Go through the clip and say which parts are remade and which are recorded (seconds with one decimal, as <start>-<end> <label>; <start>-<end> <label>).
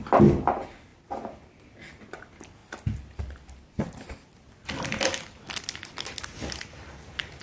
0.0-0.9 recorded; 0.9-1.9 remade; 1.9-2.6 recorded; 2.6-3.9 remade; 3.9-7.4 recorded